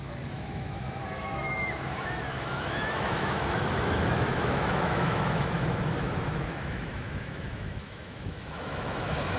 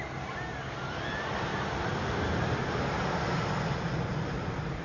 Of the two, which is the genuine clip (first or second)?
second